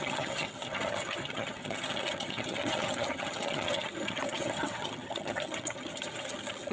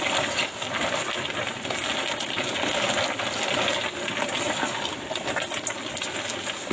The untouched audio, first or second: second